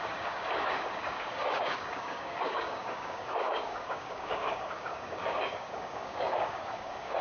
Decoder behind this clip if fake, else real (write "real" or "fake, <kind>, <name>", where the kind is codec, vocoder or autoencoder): fake, codec, DAC